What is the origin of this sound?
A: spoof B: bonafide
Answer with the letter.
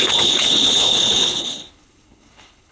A